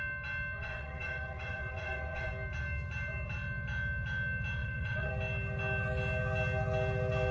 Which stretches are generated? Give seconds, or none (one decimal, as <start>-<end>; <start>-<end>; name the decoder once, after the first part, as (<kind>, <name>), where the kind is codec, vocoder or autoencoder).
0.6-2.3 (vocoder, WaveNeXt); 4.6-5.1